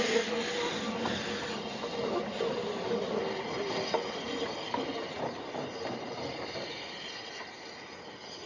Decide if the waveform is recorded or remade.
recorded